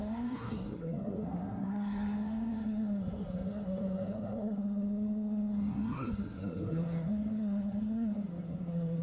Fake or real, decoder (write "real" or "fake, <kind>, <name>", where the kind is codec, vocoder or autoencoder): fake, codec, SNAC